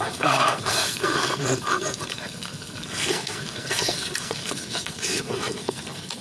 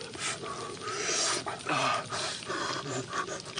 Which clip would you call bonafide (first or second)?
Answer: second